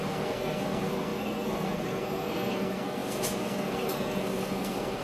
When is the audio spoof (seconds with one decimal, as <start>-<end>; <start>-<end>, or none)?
0.0-5.0